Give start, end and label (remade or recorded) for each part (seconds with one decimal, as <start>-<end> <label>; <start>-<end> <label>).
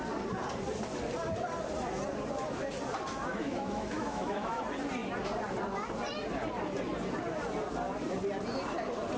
0.0-3.3 recorded; 3.3-4.6 remade; 4.6-9.2 recorded